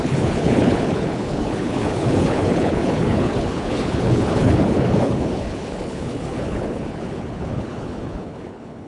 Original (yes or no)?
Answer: no